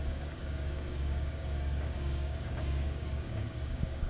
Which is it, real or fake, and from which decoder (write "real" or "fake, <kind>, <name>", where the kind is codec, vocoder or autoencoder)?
fake, codec, DAC